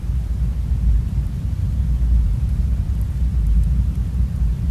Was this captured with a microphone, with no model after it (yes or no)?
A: no